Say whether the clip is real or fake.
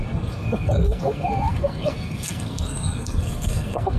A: fake